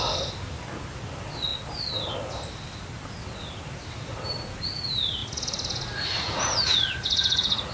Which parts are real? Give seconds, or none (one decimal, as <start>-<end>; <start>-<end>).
0.0-5.2